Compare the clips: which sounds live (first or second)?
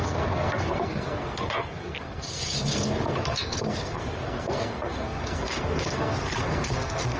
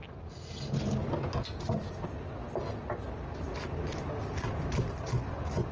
second